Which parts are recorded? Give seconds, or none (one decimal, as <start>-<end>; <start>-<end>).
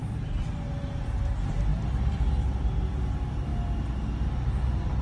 0.0-5.0